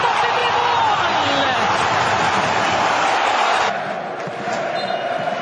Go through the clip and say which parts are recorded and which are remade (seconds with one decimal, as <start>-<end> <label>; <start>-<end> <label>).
0.0-5.4 recorded